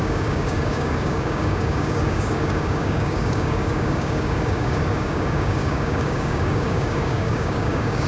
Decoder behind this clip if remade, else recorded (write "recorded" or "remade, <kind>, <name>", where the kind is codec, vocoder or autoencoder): remade, codec, DAC